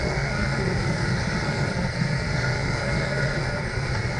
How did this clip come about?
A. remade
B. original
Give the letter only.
A